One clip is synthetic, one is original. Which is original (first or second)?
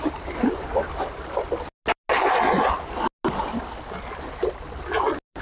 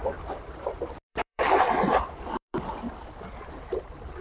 first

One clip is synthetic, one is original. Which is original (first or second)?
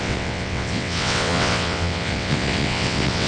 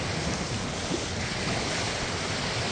second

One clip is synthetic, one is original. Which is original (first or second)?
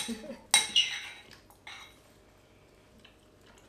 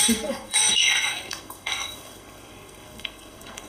first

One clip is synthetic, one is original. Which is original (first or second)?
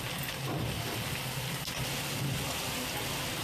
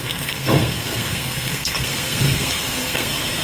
first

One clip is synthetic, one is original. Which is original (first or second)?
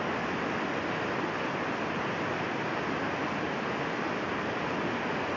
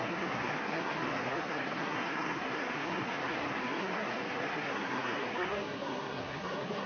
first